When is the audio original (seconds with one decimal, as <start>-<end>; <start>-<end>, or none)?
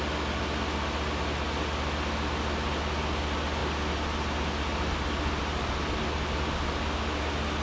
0.0-7.6